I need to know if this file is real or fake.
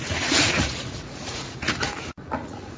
fake